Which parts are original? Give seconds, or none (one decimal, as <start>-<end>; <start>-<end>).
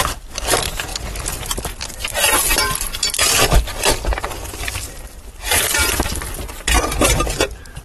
0.0-1.8; 6.5-7.8